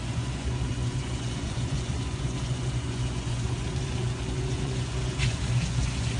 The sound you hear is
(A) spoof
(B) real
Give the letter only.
A